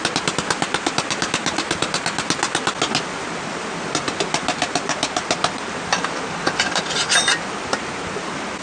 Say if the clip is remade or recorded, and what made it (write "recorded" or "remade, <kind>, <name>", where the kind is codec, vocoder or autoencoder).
recorded